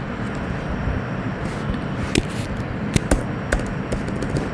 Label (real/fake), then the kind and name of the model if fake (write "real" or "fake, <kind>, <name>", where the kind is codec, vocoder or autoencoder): real